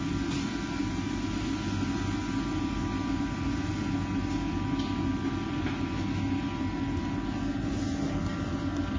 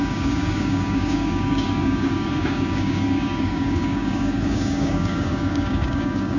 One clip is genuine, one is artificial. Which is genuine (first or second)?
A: first